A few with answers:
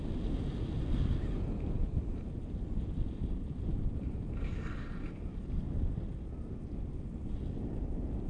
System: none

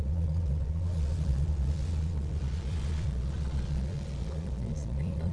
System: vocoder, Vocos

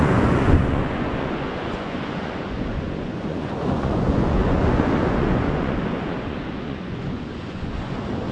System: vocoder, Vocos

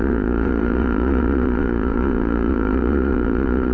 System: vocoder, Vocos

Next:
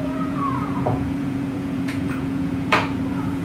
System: vocoder, Vocos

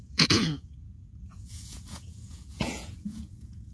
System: vocoder, Vocos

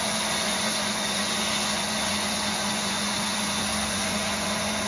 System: vocoder, Vocos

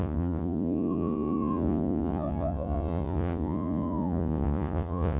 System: vocoder, Vocos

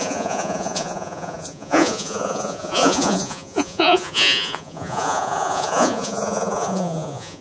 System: vocoder, Vocos